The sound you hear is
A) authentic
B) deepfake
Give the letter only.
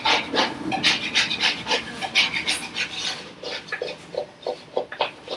A